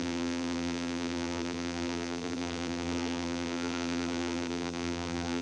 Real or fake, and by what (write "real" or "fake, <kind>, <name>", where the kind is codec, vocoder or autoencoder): fake, vocoder, BigVGAN v2